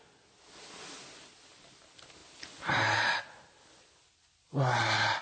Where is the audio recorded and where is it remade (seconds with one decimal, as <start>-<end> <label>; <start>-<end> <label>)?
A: 0.0-5.2 recorded